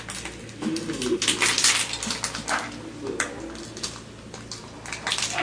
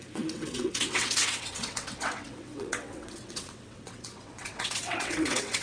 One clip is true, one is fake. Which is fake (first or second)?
second